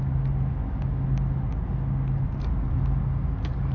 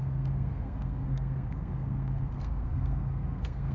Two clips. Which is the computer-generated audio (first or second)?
second